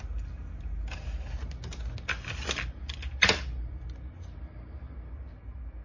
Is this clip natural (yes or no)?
yes